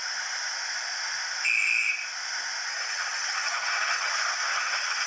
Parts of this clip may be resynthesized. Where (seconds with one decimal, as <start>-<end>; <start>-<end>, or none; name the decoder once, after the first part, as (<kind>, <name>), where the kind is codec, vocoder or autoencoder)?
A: 2.7-4.1 (vocoder, HiFi-GAN); 4.5-5.1